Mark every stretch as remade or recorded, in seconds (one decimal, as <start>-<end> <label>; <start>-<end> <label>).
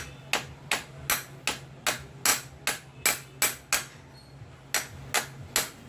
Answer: 0.0-5.9 recorded